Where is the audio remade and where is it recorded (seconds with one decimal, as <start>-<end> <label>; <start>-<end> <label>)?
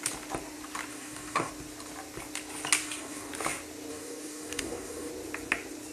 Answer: 0.0-0.9 recorded; 0.9-1.5 remade; 1.5-2.8 recorded; 2.8-3.3 remade; 3.3-3.9 recorded; 3.9-5.1 remade; 5.1-5.9 recorded